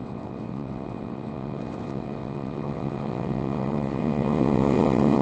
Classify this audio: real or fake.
fake